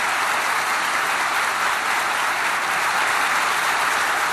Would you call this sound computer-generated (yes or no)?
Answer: no